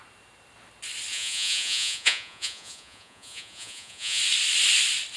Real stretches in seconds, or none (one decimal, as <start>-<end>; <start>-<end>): 0.0-1.1; 4.2-5.2